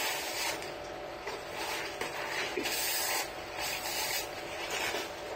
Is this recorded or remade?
recorded